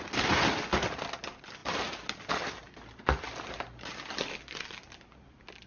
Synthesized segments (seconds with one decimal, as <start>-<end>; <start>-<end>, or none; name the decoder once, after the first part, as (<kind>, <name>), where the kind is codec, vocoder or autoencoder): none

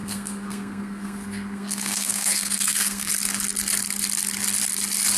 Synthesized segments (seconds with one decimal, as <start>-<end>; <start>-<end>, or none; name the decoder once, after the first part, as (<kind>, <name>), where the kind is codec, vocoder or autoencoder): 0.0-3.1 (codec, SNAC)

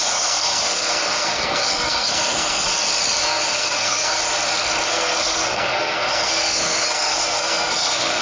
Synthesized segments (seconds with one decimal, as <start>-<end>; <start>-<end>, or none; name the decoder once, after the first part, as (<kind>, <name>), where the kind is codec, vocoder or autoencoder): 0.0-2.7 (codec, SNAC); 3.2-4.2; 4.9-8.2

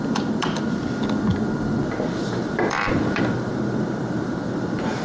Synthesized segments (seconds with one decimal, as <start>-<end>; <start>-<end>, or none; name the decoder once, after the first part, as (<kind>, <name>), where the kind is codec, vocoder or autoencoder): 0.0-5.0 (vocoder, BigVGAN v2)

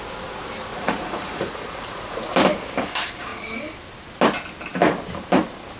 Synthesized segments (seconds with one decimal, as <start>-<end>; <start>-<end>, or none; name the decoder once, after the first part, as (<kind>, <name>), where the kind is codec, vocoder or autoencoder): 0.7-2.2 (vocoder, Vocos)

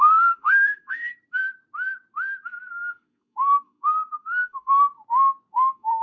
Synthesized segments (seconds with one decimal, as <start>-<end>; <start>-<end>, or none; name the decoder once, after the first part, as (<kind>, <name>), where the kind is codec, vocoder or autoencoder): 0.0-1.1 (codec, SNAC); 2.9-4.9; 5.5-6.0